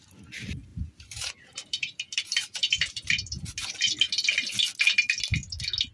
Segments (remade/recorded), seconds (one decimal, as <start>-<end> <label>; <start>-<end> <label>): 0.0-0.7 recorded; 0.7-3.5 remade; 3.5-5.9 recorded

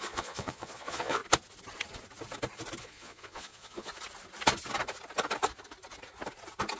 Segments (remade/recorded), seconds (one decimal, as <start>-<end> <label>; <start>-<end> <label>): 0.0-1.2 remade; 1.2-2.8 recorded; 2.8-3.9 remade; 3.9-6.8 recorded

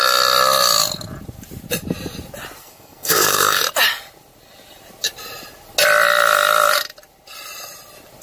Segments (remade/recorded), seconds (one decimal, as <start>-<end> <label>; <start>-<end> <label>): 0.0-2.6 recorded; 2.6-3.6 remade; 3.6-8.2 recorded

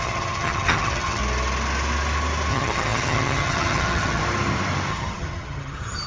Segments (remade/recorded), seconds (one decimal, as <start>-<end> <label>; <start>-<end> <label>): 0.0-1.2 remade; 1.2-2.5 recorded; 2.5-4.2 remade; 4.2-4.9 recorded; 4.9-6.1 remade

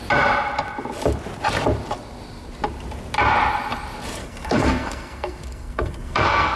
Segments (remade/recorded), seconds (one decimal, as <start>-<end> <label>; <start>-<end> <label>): 0.0-4.2 recorded; 4.2-6.6 remade

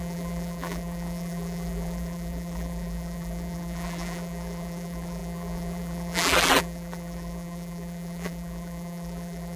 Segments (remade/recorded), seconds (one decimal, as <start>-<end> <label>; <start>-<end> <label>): 0.0-9.6 remade

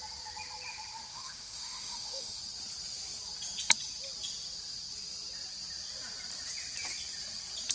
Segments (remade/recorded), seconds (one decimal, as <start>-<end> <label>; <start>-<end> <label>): 0.0-1.1 recorded; 1.1-2.4 remade; 2.4-7.7 recorded